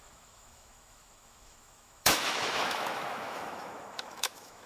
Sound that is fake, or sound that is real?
fake